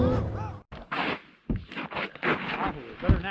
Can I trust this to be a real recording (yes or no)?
yes